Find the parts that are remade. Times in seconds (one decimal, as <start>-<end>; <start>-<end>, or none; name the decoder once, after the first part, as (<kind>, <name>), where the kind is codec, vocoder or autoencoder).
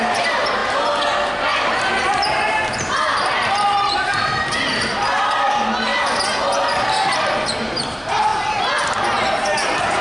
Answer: 0.0-0.6 (vocoder, BigVGAN v2); 1.7-5.9; 6.7-8.3; 9.3-10.0